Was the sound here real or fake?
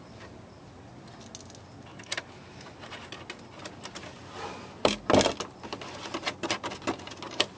real